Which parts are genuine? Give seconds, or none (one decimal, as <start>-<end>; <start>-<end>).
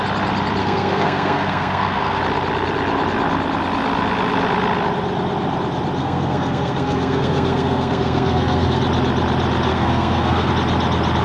0.0-0.6; 2.2-6.0; 8.8-9.7; 10.5-11.2